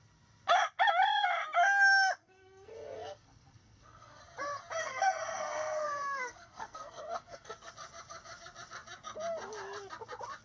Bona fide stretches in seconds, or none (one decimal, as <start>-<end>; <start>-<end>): 0.0-2.2; 4.2-4.8; 7.7-10.4